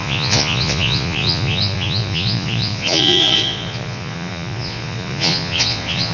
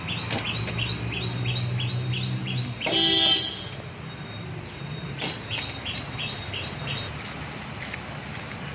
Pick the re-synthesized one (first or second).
first